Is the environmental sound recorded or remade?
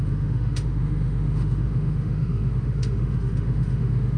remade